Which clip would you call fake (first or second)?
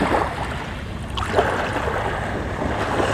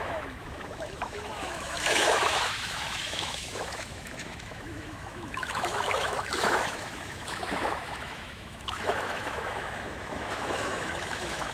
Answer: second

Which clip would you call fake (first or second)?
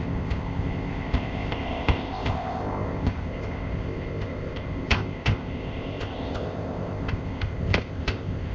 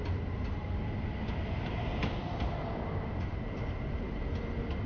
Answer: first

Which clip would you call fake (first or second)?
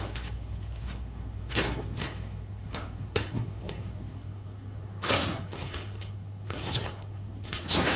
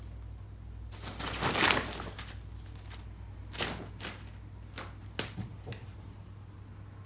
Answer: first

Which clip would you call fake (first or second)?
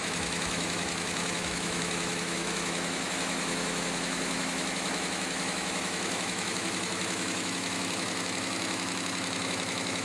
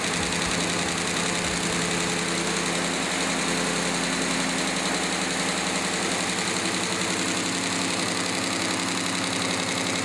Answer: first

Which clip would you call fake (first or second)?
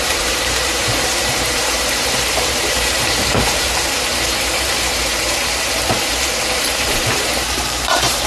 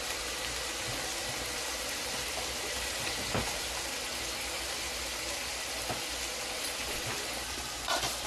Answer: first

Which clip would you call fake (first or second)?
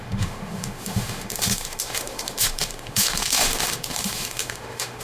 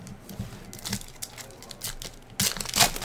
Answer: first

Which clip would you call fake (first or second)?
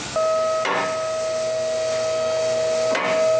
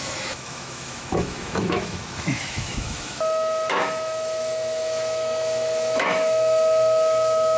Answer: second